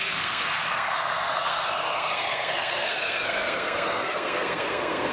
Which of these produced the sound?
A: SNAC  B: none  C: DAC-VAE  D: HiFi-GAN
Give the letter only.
A